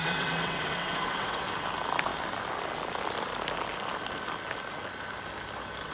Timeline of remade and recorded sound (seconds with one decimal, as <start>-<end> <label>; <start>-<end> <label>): 0.0-1.5 remade; 1.5-5.9 recorded